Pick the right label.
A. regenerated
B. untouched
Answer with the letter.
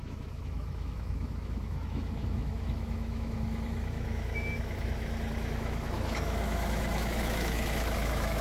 A